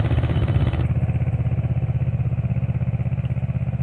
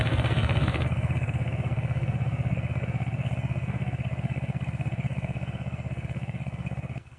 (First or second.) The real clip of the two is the first